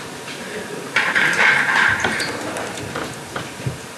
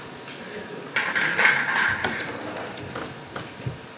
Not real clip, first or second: first